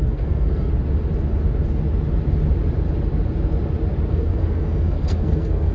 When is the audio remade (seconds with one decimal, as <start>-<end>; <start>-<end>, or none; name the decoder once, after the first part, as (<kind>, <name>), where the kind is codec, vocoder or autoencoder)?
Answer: 0.0-0.7 (codec, SNAC); 4.1-5.7